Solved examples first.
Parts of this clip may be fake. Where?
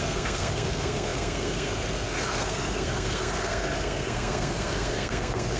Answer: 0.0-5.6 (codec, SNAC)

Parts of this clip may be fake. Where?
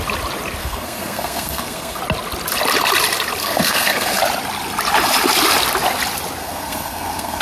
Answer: 0.6-2.0 (codec, SNAC); 3.4-4.2; 6.4-7.4